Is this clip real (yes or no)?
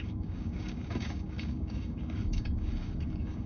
no